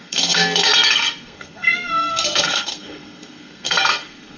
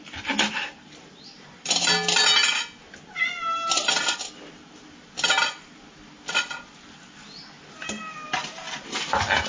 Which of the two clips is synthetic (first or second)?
first